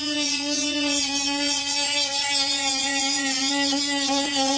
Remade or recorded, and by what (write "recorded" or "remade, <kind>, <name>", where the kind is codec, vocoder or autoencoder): remade, vocoder, Vocos